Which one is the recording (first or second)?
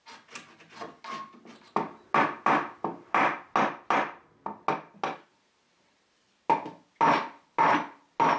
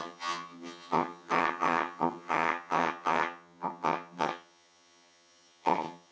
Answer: first